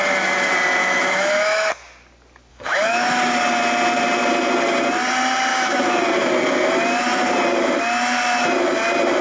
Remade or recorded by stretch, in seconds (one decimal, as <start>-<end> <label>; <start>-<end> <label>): 0.0-0.8 recorded; 0.8-1.7 remade; 1.7-2.5 recorded; 2.5-3.1 remade; 3.1-5.5 recorded; 5.5-6.0 remade; 6.0-9.2 recorded